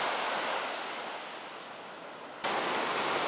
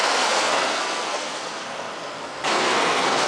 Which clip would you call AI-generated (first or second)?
second